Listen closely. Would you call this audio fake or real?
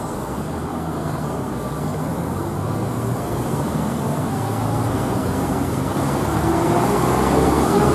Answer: fake